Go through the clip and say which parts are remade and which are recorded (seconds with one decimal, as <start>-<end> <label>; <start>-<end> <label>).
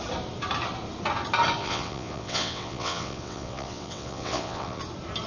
0.0-1.6 recorded; 1.6-4.8 remade; 4.8-5.3 recorded